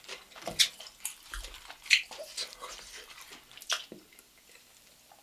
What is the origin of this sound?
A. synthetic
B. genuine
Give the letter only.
A